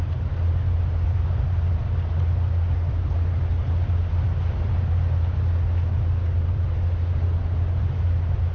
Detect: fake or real real